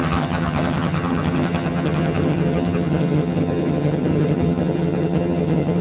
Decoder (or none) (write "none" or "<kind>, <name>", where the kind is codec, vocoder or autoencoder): vocoder, HiFi-GAN